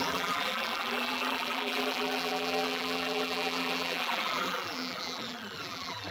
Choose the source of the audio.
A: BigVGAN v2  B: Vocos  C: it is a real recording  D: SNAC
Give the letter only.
A